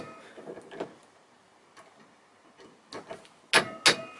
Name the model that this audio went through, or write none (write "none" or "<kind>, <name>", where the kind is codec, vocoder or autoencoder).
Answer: none